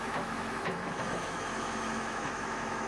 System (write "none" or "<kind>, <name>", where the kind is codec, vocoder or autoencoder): autoencoder, DAC-VAE